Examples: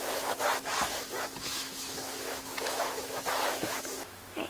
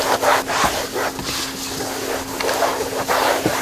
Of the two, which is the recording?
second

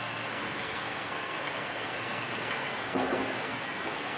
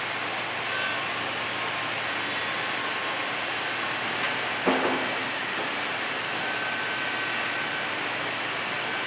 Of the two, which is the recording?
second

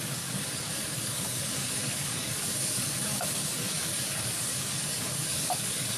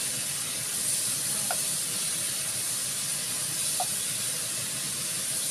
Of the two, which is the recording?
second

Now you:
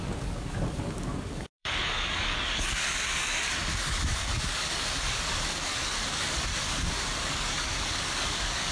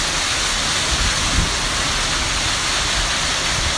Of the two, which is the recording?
second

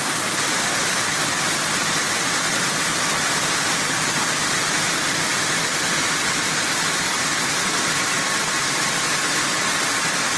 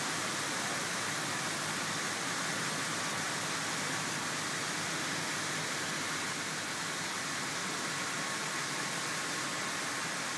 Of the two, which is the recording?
second